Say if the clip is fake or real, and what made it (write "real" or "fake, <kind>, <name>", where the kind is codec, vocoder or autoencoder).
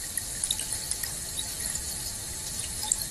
real